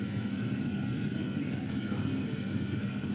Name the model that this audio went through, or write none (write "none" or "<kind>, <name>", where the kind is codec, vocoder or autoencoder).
codec, SNAC